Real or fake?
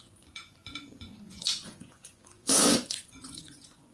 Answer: fake